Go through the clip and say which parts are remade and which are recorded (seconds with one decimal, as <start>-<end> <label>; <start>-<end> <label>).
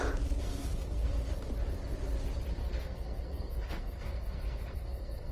0.0-0.4 recorded; 0.4-1.3 remade; 1.3-2.6 recorded; 2.6-5.3 remade